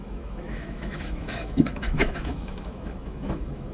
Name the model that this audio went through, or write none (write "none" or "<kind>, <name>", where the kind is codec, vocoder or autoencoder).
autoencoder, DAC-VAE